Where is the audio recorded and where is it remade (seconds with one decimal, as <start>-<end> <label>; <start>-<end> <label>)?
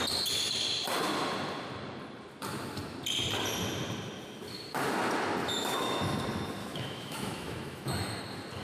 0.0-5.4 recorded; 5.4-6.0 remade; 6.0-6.6 recorded; 6.6-8.2 remade; 8.2-8.6 recorded